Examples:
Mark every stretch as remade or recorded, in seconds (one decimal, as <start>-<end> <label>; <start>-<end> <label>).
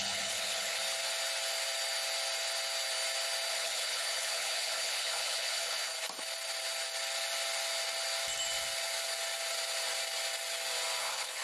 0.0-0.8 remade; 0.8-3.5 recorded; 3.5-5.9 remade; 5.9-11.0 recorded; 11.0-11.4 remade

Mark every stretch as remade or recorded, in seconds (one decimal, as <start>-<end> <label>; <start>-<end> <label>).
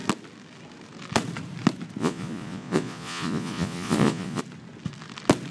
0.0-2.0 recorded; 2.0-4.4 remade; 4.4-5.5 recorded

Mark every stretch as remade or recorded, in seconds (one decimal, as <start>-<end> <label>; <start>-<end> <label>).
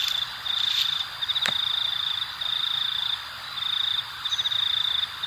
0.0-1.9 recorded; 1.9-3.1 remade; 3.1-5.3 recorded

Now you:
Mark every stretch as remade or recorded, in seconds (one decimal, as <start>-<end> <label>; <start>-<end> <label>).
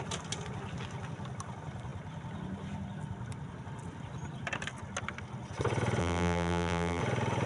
0.0-6.0 recorded; 6.0-7.0 remade; 7.0-7.5 recorded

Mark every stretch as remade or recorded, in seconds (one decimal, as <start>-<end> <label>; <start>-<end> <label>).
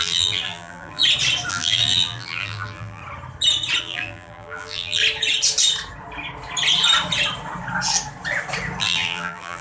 0.0-1.0 remade; 1.0-1.5 recorded; 1.5-3.0 remade; 3.0-3.8 recorded; 3.8-5.0 remade; 5.0-8.8 recorded; 8.8-9.6 remade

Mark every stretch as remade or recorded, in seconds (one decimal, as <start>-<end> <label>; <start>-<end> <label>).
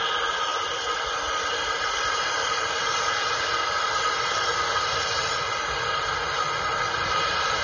0.0-0.5 recorded; 0.5-4.0 remade; 4.0-7.6 recorded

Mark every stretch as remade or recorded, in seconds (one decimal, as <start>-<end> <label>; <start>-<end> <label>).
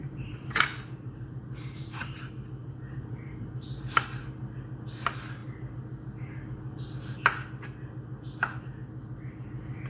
0.0-2.2 remade; 2.2-2.6 recorded; 2.6-4.2 remade; 4.2-9.9 recorded